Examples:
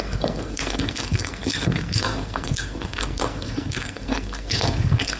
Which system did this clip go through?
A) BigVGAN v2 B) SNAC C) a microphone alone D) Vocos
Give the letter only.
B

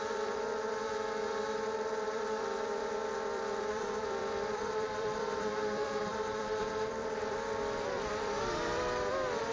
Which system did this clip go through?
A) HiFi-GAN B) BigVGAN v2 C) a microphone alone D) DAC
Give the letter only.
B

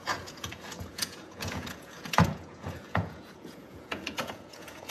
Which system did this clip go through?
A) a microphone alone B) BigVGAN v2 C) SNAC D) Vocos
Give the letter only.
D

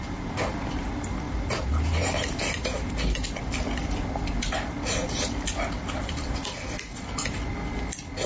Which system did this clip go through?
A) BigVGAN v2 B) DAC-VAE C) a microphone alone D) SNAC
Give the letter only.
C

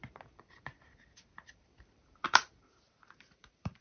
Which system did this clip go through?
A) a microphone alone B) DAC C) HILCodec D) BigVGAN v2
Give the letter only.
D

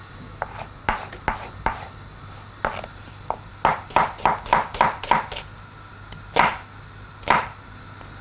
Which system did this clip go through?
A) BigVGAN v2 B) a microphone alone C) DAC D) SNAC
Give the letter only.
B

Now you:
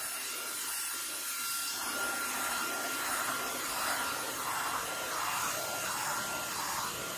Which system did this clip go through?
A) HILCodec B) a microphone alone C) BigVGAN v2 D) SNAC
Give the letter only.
B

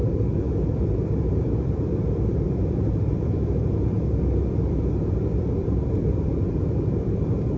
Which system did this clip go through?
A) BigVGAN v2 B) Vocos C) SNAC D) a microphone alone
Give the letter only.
A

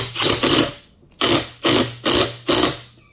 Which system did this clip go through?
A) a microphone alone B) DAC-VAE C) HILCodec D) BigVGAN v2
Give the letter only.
A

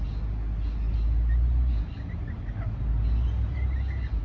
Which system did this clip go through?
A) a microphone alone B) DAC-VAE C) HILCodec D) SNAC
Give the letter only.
A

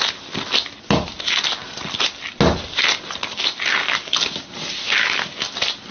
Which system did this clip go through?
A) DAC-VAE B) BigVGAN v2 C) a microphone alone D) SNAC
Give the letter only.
C